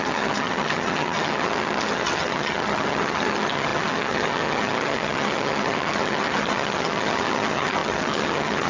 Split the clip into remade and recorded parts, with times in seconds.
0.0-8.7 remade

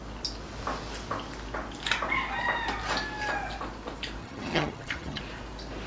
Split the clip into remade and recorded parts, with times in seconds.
0.0-4.2 recorded; 4.2-5.2 remade; 5.2-5.9 recorded

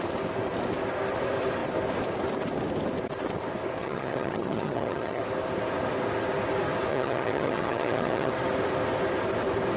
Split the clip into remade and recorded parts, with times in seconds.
0.0-3.8 recorded; 3.8-5.2 remade; 5.2-6.9 recorded; 6.9-8.3 remade; 8.3-9.8 recorded